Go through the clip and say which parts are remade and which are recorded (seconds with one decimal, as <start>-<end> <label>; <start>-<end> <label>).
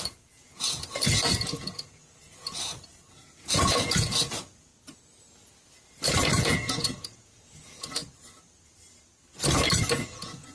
0.0-4.7 remade; 4.7-6.4 recorded; 6.4-8.0 remade; 8.0-10.1 recorded; 10.1-10.5 remade